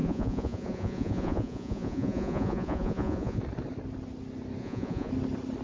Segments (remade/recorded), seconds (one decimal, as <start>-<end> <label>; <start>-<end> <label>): 0.0-3.4 remade; 3.4-4.6 recorded; 4.6-5.1 remade; 5.1-5.6 recorded